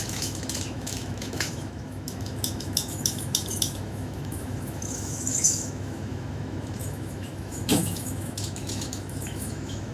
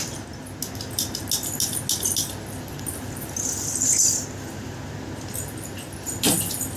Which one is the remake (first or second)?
first